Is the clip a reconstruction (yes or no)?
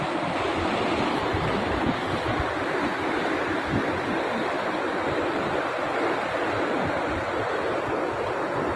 yes